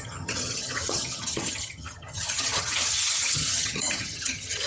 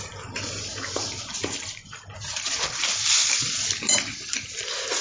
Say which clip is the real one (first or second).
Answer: second